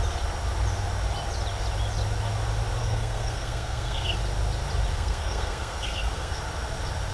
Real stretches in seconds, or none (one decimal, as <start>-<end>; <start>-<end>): 0.0-2.8; 4.2-4.9; 6.4-7.1